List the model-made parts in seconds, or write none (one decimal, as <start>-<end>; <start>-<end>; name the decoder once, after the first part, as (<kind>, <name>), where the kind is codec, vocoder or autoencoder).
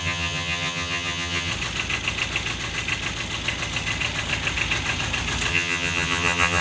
0.0-1.5 (vocoder, HiFi-GAN); 5.5-6.6